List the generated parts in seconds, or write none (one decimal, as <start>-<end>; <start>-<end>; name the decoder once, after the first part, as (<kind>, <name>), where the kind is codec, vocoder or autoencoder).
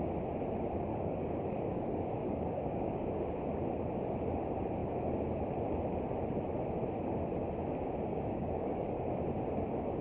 0.9-3.4 (codec, DAC); 8.1-9.1